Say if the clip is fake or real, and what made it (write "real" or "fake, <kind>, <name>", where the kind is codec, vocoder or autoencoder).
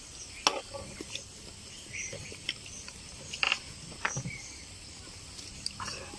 real